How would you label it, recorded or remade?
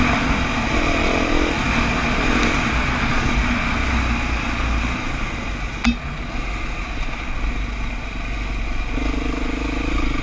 recorded